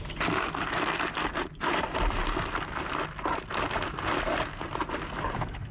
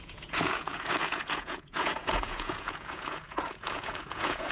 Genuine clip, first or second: first